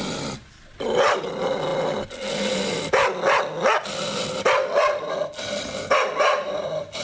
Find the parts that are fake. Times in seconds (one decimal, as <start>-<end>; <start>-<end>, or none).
none